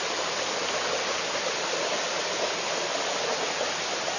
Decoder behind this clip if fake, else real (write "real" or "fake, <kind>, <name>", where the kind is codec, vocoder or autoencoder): real